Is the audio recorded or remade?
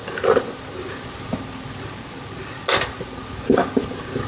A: recorded